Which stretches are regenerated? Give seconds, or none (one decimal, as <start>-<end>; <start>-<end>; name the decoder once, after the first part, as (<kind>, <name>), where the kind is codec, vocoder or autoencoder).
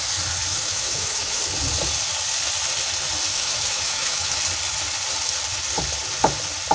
0.5-1.4 (autoencoder, DAC-VAE); 3.3-4.4